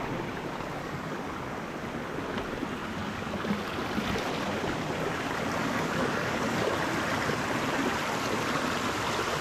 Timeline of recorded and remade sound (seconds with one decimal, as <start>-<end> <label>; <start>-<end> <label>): 0.0-0.7 recorded; 0.7-1.4 remade; 1.4-2.8 recorded; 2.8-3.3 remade; 3.3-5.6 recorded; 5.6-6.7 remade; 6.7-9.4 recorded